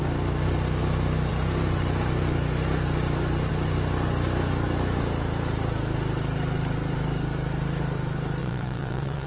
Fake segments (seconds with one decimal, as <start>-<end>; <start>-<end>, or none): 8.4-9.3